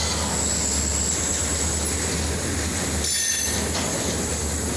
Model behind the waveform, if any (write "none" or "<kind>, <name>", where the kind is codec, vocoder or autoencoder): none